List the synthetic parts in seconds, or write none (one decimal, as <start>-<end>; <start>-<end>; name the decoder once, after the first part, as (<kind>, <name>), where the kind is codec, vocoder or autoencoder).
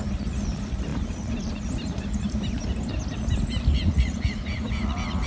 3.7-5.3 (vocoder, Vocos)